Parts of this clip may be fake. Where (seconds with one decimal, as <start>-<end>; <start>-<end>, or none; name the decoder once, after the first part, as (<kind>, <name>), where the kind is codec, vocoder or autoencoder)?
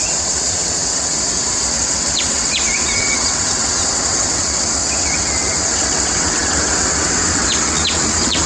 0.0-8.5 (vocoder, WaveNeXt)